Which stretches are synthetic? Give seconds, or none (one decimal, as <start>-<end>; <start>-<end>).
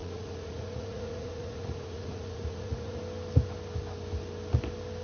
0.0-3.0